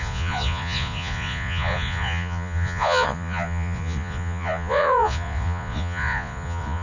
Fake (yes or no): yes